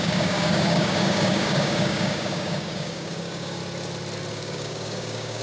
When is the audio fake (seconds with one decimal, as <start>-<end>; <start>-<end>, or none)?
0.0-3.6; 4.3-5.4